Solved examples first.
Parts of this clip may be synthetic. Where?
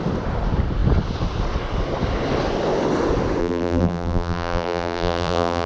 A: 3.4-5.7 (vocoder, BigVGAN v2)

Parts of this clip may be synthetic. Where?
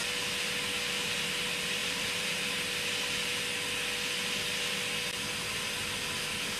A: 1.8-2.7 (vocoder, BigVGAN v2)